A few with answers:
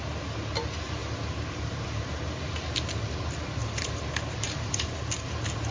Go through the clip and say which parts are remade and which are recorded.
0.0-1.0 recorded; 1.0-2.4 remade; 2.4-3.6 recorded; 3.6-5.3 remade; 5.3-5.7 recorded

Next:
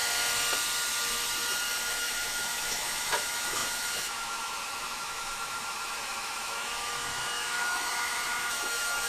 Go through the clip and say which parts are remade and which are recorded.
0.0-1.9 recorded; 1.9-9.1 remade

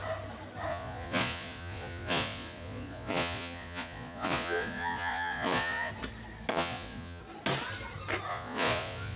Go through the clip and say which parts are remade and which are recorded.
0.0-0.7 recorded; 0.7-5.9 remade; 5.9-6.5 recorded; 6.5-7.2 remade; 7.2-8.3 recorded; 8.3-9.2 remade

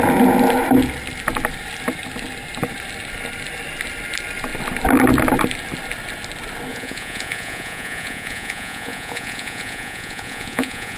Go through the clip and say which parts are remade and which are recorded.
0.0-6.7 recorded; 6.7-11.0 remade

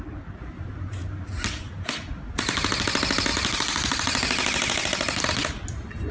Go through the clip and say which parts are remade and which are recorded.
0.0-3.3 recorded; 3.3-5.3 remade; 5.3-6.1 recorded

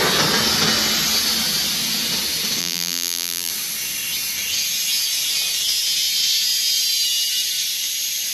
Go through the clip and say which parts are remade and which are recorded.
0.0-2.6 recorded; 2.6-3.5 remade; 3.5-8.3 recorded